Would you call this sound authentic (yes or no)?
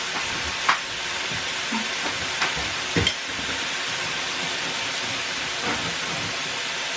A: yes